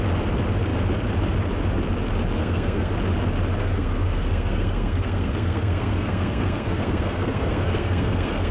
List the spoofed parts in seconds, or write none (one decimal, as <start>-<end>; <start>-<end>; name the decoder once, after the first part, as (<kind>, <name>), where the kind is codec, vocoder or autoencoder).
2.4-2.9 (codec, SNAC); 3.6-8.5